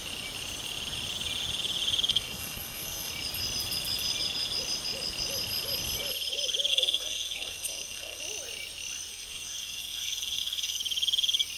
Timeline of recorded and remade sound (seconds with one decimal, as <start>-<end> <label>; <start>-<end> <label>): 0.0-2.1 recorded; 2.1-3.1 remade; 3.1-6.7 recorded; 6.7-8.2 remade; 8.2-9.1 recorded; 9.1-10.8 remade; 10.8-11.6 recorded

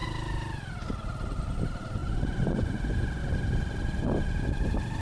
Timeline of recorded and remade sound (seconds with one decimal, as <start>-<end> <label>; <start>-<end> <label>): 0.0-2.0 recorded; 2.0-3.2 remade; 3.2-5.0 recorded

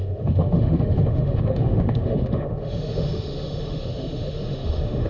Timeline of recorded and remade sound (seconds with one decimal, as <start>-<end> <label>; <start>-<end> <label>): 0.0-5.1 remade

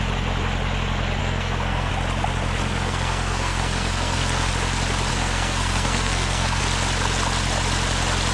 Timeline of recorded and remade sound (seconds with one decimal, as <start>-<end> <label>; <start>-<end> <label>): 0.0-1.2 recorded; 1.2-1.9 remade; 1.9-2.6 recorded; 2.6-4.5 remade; 4.5-5.1 recorded; 5.1-6.6 remade; 6.6-8.3 recorded

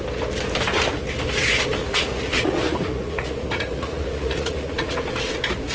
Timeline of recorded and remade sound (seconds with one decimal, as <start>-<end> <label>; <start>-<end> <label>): 0.0-1.8 recorded; 1.8-5.1 remade; 5.1-5.7 recorded

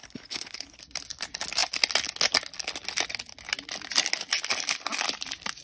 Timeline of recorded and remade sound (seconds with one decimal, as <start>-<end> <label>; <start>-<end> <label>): 0.0-0.8 remade; 0.8-5.6 recorded